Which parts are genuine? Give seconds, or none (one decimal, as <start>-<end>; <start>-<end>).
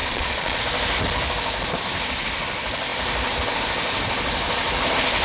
0.6-5.2